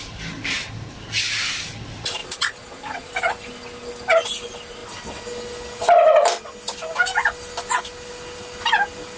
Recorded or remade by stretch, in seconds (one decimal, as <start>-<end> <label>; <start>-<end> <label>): 0.0-2.2 recorded; 2.2-3.1 remade; 3.1-9.2 recorded